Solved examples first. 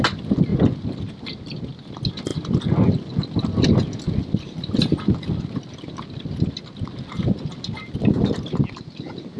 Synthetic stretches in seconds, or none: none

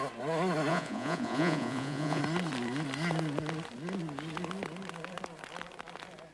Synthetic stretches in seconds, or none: 0.7-2.2 (vocoder, Vocos)

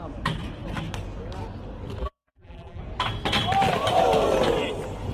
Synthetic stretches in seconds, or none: 2.0-2.8 (vocoder, BigVGAN v2)

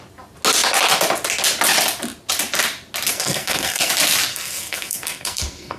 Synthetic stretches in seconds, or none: 3.1-3.9 (codec, SNAC); 4.3-5.8

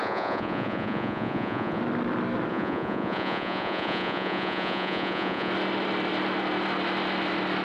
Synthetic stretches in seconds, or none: 0.0-1.8 (vocoder, Vocos); 2.5-5.5